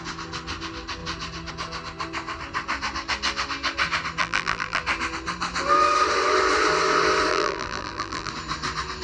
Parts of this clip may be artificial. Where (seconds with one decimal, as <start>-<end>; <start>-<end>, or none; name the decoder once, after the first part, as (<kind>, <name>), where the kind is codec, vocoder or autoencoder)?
4.2-4.8 (vocoder, BigVGAN v2); 7.3-8.3